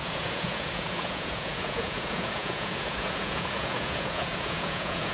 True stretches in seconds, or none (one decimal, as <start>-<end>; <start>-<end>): none